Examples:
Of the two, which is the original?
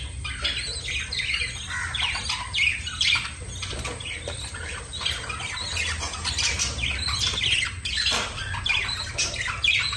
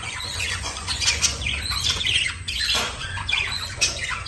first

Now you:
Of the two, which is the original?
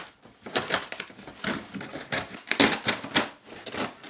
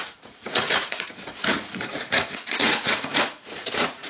first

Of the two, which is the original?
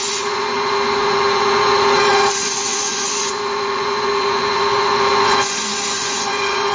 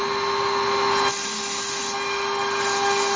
second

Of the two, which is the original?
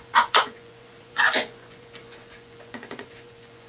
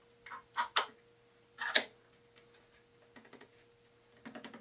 second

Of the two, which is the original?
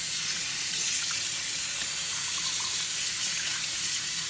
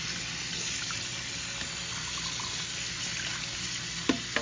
second